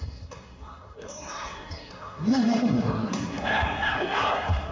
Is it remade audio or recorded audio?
remade